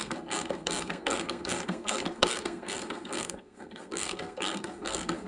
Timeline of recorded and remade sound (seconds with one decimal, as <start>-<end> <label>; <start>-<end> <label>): 0.0-5.3 remade